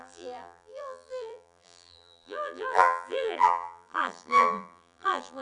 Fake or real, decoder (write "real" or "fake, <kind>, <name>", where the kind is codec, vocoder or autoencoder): fake, vocoder, BigVGAN v2